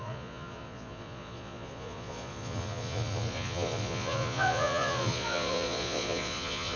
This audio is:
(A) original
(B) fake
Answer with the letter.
B